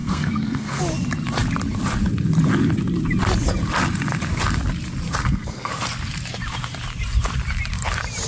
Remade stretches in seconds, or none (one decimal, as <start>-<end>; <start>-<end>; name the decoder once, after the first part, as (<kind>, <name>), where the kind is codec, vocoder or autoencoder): 0.0-0.8 (codec, SNAC); 5.2-5.7